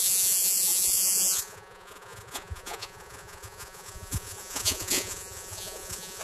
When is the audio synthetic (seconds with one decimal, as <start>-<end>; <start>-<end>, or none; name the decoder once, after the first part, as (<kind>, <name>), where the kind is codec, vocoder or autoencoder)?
0.0-6.2 (vocoder, Vocos)